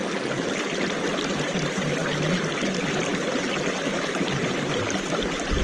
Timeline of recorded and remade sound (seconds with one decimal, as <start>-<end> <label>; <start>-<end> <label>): 0.0-3.1 recorded; 3.1-5.6 remade